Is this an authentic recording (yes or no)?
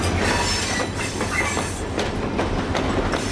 yes